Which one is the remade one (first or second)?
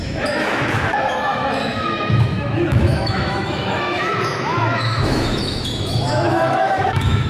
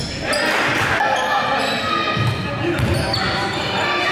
first